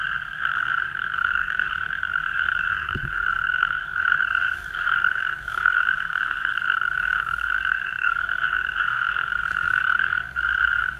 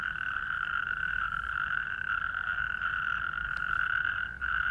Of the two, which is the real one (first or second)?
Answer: second